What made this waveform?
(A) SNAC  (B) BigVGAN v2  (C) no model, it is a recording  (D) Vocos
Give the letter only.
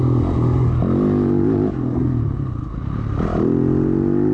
C